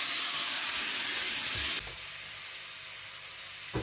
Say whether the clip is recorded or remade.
recorded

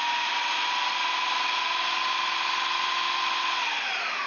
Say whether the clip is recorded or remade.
recorded